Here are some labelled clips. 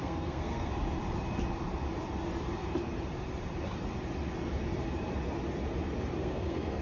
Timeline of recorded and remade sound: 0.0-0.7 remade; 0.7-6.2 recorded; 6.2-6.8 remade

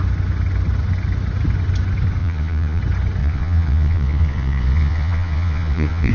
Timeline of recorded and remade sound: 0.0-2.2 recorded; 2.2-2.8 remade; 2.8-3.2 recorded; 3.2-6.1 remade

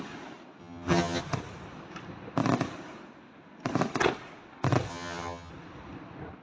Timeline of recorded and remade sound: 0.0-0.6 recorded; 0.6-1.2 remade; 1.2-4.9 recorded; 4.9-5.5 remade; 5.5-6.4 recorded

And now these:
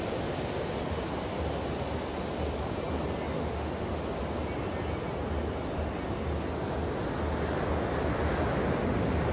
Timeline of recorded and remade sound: 0.0-3.4 recorded; 3.4-4.0 remade; 4.0-9.3 recorded